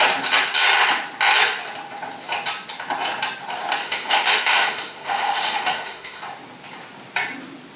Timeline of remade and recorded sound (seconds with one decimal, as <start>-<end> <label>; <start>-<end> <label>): 0.0-3.8 recorded; 3.8-6.2 remade; 6.2-7.8 recorded